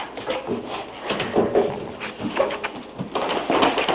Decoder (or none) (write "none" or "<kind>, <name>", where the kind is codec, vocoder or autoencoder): none